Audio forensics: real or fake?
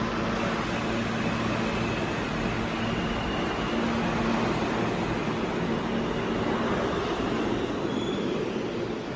real